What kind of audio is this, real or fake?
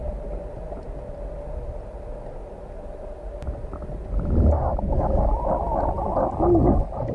real